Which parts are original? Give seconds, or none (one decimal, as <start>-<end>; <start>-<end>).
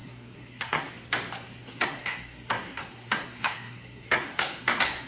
0.9-1.6